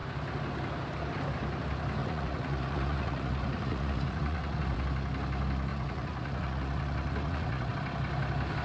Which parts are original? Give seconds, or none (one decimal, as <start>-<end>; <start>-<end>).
0.0-2.0; 4.8-5.7; 7.7-8.6